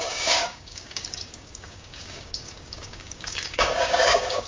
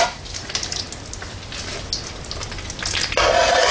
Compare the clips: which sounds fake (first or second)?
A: first